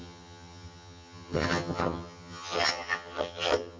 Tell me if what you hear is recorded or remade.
remade